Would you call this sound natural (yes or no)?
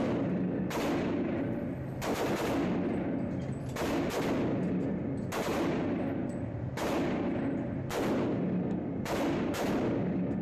yes